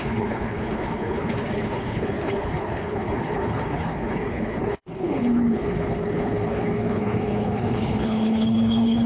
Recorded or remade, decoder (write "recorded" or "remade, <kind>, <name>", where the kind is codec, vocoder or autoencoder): remade, codec, HILCodec